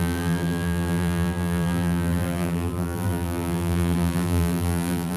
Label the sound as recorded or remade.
remade